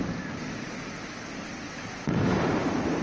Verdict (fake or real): real